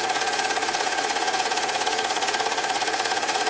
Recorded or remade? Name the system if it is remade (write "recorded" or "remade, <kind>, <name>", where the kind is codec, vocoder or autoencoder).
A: remade, vocoder, Vocos